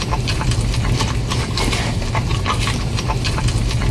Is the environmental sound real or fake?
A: real